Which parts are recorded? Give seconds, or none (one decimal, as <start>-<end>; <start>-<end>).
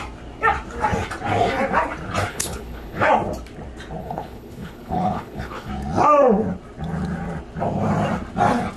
0.0-2.3; 3.1-4.0; 5.7-8.8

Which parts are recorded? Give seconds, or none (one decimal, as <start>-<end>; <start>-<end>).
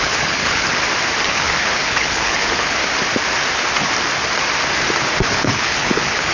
0.7-1.3; 2.8-5.3